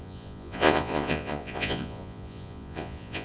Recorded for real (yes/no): no